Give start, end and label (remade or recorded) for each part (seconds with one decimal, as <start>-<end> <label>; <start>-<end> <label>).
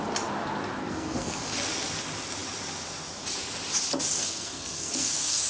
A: 0.0-0.8 recorded; 0.8-1.4 remade; 1.4-4.2 recorded; 4.2-5.5 remade